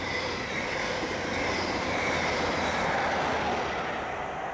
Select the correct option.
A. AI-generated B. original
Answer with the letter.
B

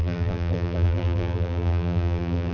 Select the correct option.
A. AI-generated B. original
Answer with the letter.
A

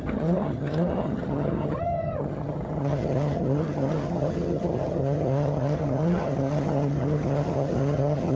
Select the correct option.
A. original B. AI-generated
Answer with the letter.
B